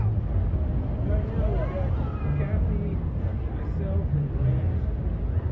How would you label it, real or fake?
real